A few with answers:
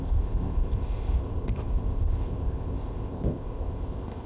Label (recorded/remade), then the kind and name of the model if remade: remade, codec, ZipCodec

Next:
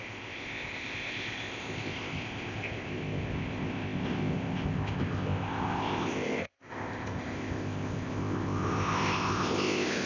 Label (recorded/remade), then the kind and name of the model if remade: remade, codec, ZipCodec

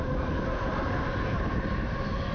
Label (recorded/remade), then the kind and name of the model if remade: recorded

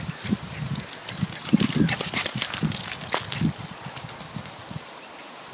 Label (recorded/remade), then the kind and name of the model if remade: recorded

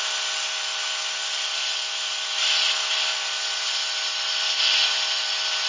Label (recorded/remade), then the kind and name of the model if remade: recorded